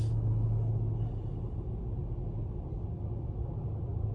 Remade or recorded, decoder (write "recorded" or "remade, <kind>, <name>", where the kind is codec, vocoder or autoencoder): recorded